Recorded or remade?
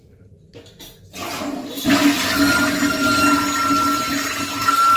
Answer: recorded